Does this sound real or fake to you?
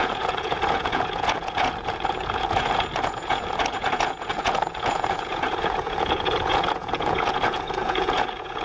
fake